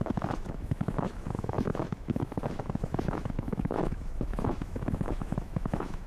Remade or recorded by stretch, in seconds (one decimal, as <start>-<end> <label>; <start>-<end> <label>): 0.0-6.1 remade